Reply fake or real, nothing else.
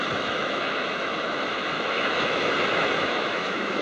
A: fake